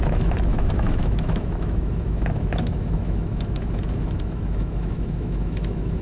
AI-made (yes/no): yes